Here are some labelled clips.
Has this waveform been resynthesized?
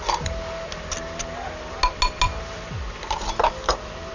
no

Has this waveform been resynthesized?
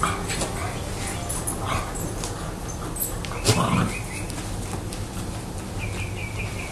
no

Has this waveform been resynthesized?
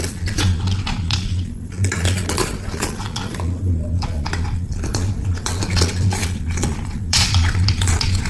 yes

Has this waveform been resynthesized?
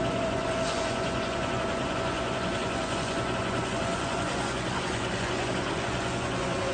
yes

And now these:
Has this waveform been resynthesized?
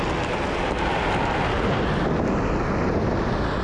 no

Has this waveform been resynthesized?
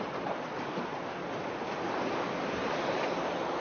no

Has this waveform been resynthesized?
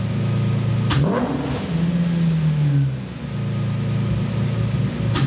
no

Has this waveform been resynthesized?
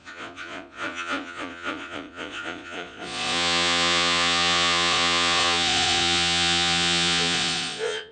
yes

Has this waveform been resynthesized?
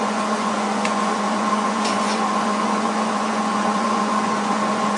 yes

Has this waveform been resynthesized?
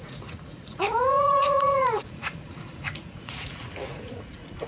yes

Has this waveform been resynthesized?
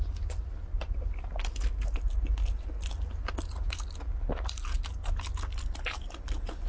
no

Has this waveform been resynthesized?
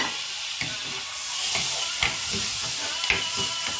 no